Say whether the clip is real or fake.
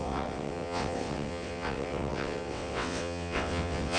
fake